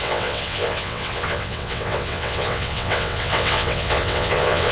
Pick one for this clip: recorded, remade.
remade